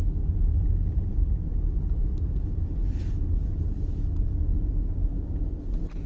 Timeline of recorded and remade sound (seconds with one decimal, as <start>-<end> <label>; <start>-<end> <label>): 0.0-1.1 recorded; 1.1-2.0 remade; 2.0-3.4 recorded; 3.4-4.3 remade; 4.3-6.1 recorded